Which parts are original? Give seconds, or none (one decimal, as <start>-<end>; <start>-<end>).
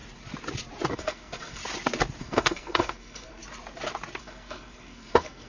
0.0-0.9; 1.6-2.2; 3.4-4.2